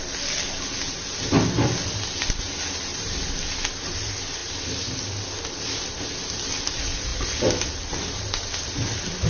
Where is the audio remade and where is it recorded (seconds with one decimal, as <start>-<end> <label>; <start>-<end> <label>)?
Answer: 0.0-2.9 recorded; 2.9-3.7 remade; 3.7-4.4 recorded; 4.4-6.0 remade; 6.0-7.1 recorded; 7.1-7.7 remade; 7.7-9.3 recorded